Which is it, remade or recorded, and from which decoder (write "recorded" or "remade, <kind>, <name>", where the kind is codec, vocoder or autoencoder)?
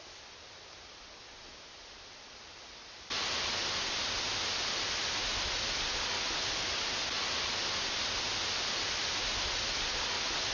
recorded